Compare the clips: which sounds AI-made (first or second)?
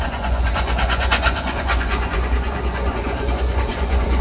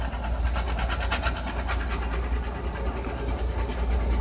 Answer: first